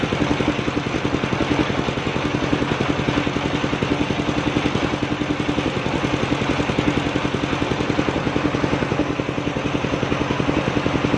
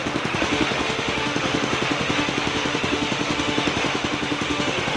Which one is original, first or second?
first